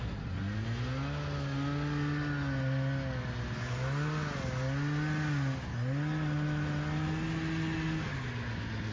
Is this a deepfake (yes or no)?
no